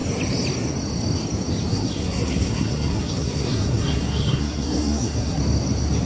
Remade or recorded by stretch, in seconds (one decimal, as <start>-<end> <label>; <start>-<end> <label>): 0.0-1.7 recorded; 1.7-5.4 remade; 5.4-6.1 recorded